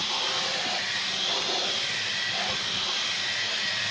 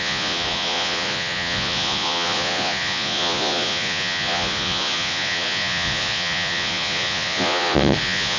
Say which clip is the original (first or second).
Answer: first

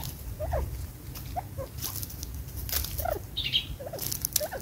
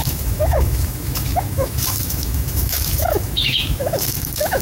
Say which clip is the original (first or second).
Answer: first